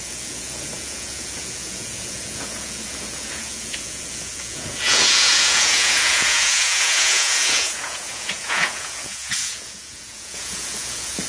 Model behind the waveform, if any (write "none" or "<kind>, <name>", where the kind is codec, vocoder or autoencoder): vocoder, Vocos